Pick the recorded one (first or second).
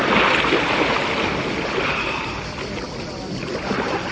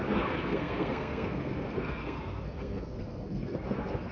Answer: first